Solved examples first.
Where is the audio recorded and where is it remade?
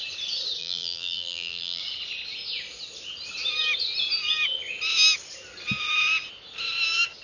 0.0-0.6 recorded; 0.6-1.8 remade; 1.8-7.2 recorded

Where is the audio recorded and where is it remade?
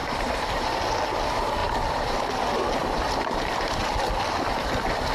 0.0-0.9 remade; 0.9-1.6 recorded; 1.6-2.2 remade; 2.2-2.8 recorded; 2.8-3.9 remade; 3.9-5.1 recorded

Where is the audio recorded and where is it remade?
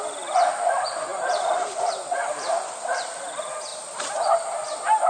0.0-1.1 recorded; 1.1-3.1 remade; 3.1-3.7 recorded; 3.7-4.6 remade; 4.6-5.1 recorded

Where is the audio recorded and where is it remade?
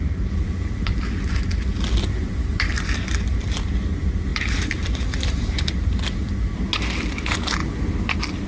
0.0-2.2 recorded; 2.2-3.3 remade; 3.3-4.3 recorded; 4.3-5.6 remade; 5.6-8.5 recorded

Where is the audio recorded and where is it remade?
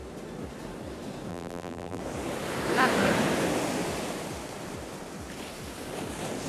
0.0-1.3 recorded; 1.3-2.0 remade; 2.0-6.5 recorded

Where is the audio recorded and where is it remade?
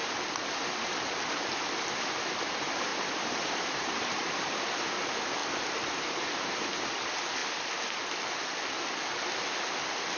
0.0-2.9 recorded; 2.9-4.9 remade; 4.9-10.2 recorded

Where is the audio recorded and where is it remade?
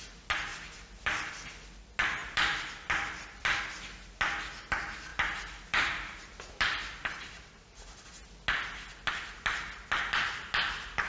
0.0-0.5 recorded; 0.5-1.3 remade; 1.3-2.2 recorded; 2.2-3.6 remade; 3.6-5.1 recorded; 5.1-8.0 remade; 8.0-11.1 recorded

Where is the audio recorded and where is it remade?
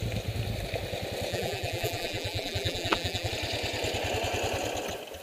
0.0-1.3 recorded; 1.3-3.3 remade; 3.3-5.2 recorded